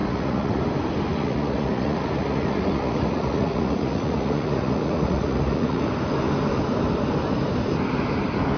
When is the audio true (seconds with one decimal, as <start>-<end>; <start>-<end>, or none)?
0.6-1.1; 5.9-8.6